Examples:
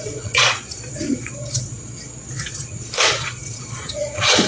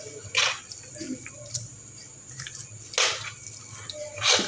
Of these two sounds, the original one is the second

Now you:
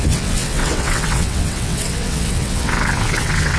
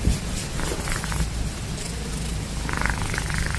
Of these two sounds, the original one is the second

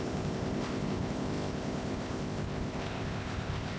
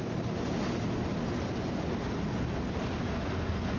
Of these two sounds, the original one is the second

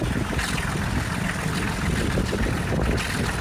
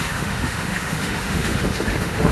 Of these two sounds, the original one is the first